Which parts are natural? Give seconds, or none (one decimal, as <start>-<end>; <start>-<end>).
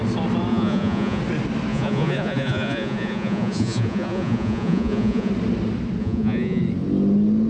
0.0-0.5; 1.2-1.7; 5.3-6.0; 6.6-7.5